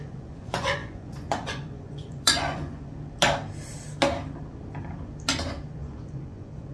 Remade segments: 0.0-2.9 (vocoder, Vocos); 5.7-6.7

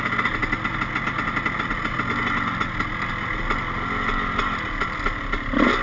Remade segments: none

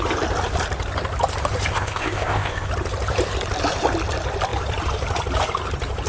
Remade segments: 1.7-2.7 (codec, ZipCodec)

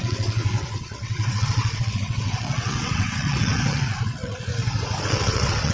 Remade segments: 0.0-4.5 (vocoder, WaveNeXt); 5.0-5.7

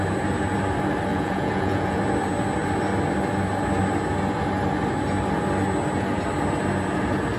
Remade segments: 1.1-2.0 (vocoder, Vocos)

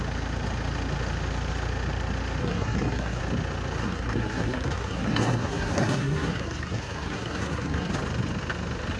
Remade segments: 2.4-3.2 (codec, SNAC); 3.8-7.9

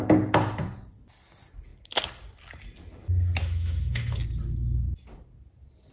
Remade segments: 3.4-4.2 (autoencoder, DAC-VAE)